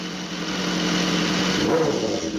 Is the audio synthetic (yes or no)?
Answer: no